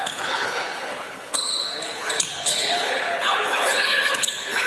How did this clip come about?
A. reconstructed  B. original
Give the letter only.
A